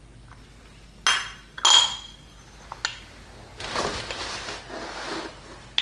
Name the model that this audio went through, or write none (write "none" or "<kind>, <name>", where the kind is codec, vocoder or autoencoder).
none